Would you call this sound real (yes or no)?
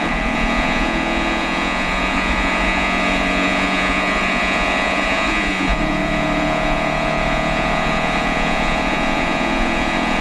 no